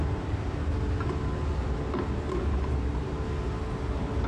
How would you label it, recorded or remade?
recorded